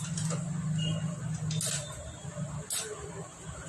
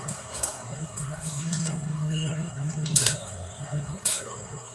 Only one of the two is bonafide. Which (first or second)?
first